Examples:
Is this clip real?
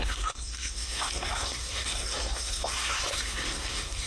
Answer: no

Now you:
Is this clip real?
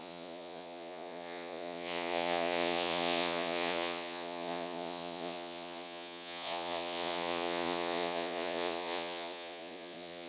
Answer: no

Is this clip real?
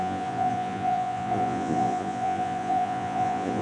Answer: no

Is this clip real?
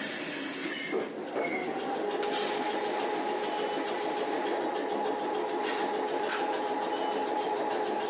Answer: yes